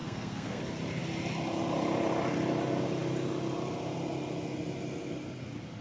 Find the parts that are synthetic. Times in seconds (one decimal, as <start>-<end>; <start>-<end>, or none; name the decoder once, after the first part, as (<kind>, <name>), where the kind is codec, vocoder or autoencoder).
0.0-0.6 (codec, SNAC)